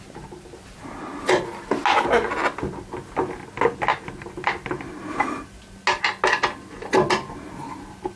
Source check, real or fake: real